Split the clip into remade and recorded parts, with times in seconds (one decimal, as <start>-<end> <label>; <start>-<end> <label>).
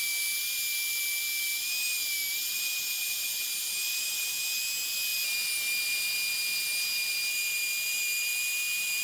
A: 0.0-9.0 recorded